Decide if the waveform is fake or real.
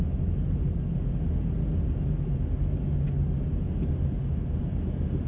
real